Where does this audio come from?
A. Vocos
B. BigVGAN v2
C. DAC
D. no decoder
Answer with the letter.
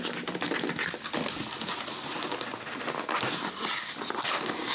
D